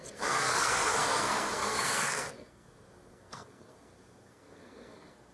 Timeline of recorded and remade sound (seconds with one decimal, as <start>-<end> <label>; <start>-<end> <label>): 0.0-5.3 remade